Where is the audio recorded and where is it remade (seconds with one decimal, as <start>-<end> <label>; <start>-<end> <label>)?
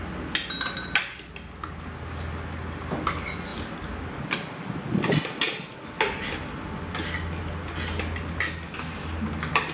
0.0-9.7 recorded